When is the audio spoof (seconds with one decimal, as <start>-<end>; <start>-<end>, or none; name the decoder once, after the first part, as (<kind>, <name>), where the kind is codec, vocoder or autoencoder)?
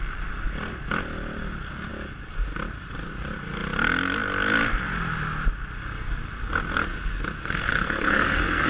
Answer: 7.4-8.7 (codec, SNAC)